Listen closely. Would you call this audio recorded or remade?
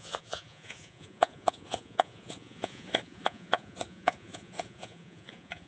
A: remade